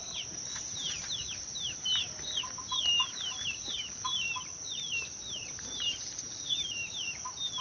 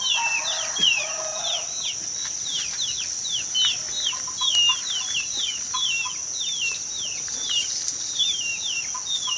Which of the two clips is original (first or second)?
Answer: second